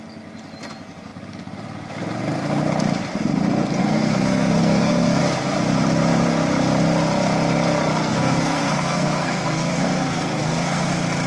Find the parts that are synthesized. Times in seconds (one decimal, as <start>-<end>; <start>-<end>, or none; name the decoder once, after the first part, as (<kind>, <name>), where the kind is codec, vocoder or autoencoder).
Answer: 3.8-5.2 (codec, SNAC); 8.0-10.9